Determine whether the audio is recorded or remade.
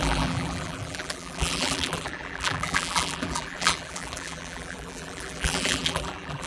remade